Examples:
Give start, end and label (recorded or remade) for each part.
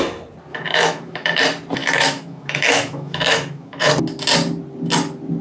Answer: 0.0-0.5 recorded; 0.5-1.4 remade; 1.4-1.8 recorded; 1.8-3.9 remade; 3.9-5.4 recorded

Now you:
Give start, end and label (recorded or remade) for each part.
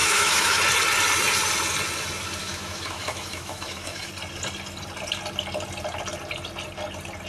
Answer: 0.0-0.6 remade; 0.6-2.4 recorded; 2.4-4.1 remade; 4.1-7.3 recorded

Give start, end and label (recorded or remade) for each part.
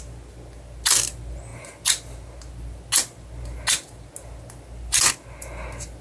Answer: 0.0-6.0 recorded